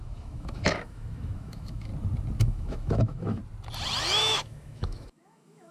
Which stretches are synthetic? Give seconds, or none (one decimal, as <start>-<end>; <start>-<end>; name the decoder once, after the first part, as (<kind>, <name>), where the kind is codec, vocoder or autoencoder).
0.0-1.9 (autoencoder, DAC-VAE); 2.4-3.4; 4.2-5.7